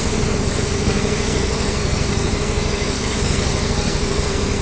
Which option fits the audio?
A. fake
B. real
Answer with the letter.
A